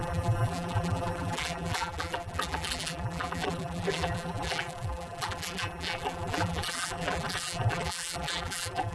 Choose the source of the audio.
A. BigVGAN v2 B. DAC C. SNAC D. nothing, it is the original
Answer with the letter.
A